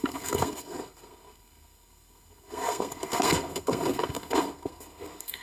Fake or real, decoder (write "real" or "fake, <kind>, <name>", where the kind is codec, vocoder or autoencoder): fake, codec, SNAC